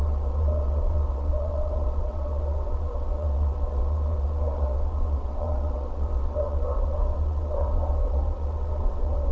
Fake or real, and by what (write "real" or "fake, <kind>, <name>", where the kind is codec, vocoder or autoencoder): fake, vocoder, WaveNeXt